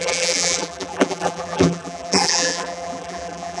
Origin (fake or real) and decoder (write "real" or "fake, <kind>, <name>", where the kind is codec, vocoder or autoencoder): fake, vocoder, BigVGAN v2